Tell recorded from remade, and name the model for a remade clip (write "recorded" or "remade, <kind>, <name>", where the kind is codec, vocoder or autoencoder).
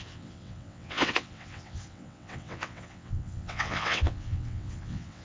remade, vocoder, WaveNeXt